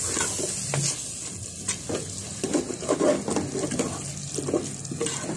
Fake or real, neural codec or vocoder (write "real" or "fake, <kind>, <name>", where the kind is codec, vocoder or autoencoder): real